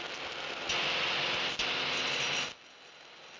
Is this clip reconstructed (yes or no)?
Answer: no